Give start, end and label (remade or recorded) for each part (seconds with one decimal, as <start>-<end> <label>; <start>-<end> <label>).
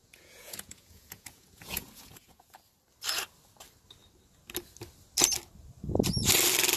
0.0-2.6 remade; 2.6-6.8 recorded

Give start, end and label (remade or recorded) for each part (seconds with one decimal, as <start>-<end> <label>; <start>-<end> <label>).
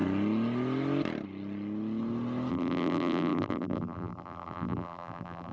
0.0-2.5 recorded; 2.5-5.5 remade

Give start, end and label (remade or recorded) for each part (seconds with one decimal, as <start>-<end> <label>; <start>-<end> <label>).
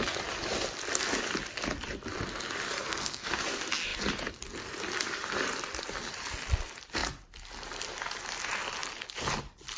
0.0-2.8 recorded; 2.8-3.4 remade; 3.4-9.8 recorded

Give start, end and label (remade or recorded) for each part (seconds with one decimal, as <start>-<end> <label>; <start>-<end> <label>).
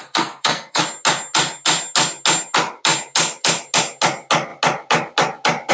0.0-0.8 remade; 0.8-5.7 recorded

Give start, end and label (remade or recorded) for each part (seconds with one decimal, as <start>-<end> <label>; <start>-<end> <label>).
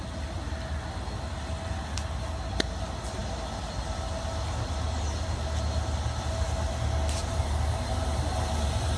0.0-7.2 recorded; 7.2-8.0 remade; 8.0-9.0 recorded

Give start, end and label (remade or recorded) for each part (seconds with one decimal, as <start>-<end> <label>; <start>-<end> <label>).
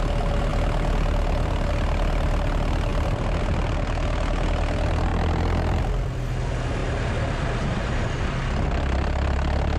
0.0-9.8 recorded